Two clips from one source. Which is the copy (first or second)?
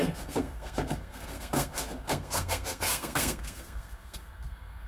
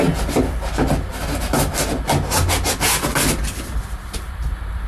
first